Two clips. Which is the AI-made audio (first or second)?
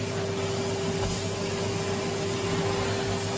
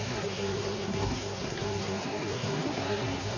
second